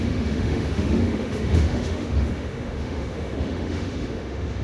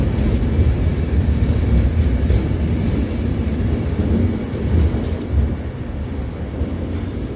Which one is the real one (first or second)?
second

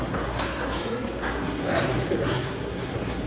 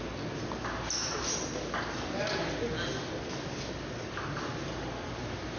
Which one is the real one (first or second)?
second